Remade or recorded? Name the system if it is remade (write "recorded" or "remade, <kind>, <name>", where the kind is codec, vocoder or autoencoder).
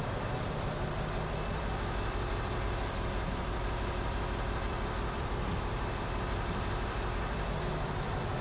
remade, vocoder, BigVGAN v2